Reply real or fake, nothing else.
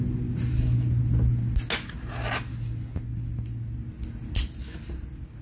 real